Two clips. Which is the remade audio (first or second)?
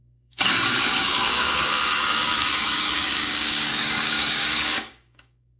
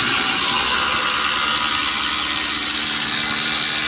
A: first